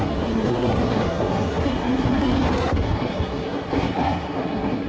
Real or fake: fake